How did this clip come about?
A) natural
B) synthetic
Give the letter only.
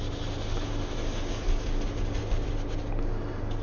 A